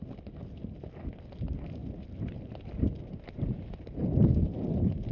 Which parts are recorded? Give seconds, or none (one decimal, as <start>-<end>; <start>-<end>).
0.0-5.1